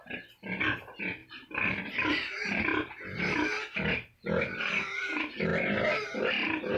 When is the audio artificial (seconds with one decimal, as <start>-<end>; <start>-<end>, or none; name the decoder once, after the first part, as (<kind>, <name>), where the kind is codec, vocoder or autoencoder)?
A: 0.0-2.7 (vocoder, BigVGAN v2); 3.2-5.5; 6.3-6.8